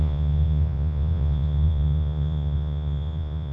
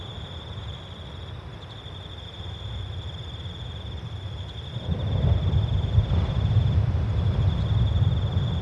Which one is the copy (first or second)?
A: first